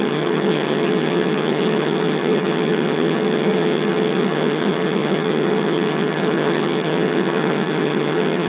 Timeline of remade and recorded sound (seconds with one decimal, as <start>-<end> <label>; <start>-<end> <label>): 0.0-8.5 remade